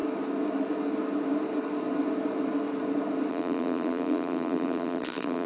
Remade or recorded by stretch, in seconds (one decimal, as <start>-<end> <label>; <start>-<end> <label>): 0.0-3.3 recorded; 3.3-5.5 remade